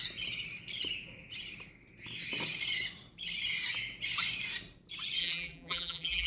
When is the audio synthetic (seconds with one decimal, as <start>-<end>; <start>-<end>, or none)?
5.2-6.3